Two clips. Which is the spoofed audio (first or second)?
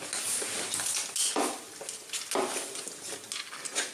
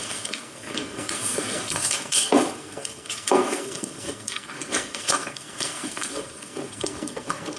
second